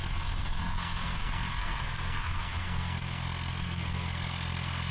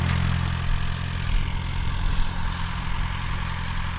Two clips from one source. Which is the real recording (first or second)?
second